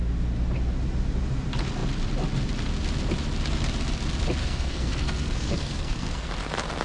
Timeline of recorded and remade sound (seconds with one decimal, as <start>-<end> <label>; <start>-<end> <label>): 0.0-4.4 recorded; 4.4-6.3 remade; 6.3-6.8 recorded